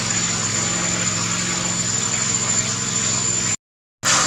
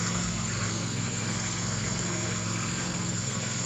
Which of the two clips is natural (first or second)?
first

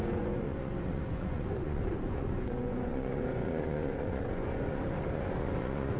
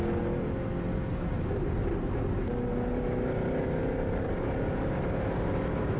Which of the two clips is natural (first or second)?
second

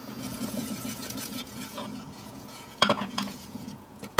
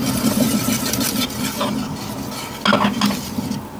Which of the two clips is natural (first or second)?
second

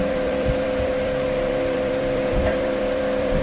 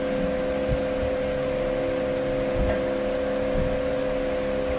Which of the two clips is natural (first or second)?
second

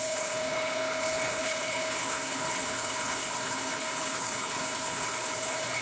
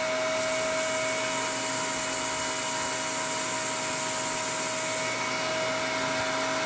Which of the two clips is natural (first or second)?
second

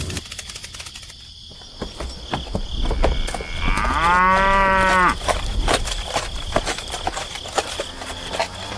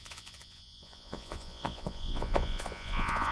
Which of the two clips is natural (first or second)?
first